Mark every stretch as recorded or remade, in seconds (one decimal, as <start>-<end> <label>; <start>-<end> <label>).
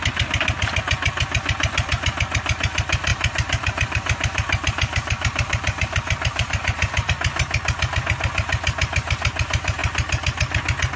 0.0-3.1 recorded; 3.1-7.1 remade; 7.1-11.0 recorded